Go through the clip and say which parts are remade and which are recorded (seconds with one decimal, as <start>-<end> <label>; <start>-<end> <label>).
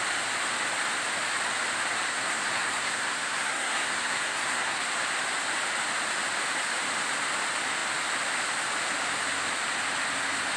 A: 0.0-2.1 recorded; 2.1-4.9 remade; 4.9-10.6 recorded